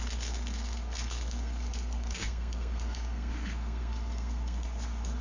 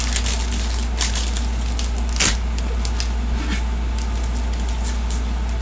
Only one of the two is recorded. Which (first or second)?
second